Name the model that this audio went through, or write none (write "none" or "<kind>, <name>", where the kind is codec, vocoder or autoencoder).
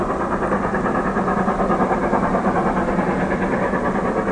none